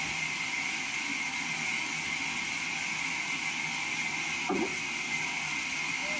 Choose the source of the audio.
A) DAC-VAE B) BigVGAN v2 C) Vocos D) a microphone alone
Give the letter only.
D